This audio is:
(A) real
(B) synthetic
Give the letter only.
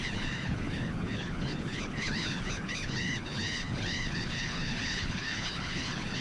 B